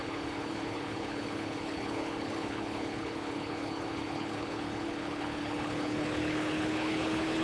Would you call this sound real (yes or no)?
no